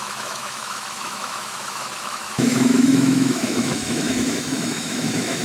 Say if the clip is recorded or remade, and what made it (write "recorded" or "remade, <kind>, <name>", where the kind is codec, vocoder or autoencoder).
remade, autoencoder, DAC-VAE